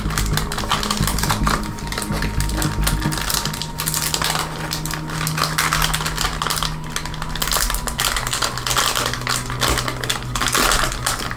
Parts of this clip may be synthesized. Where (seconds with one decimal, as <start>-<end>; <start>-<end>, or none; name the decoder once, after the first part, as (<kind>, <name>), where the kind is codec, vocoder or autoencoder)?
none